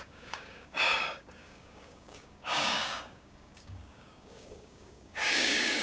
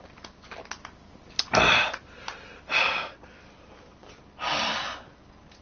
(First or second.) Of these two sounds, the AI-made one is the first